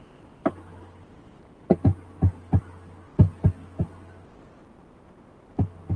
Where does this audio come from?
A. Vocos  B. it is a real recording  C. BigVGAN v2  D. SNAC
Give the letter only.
B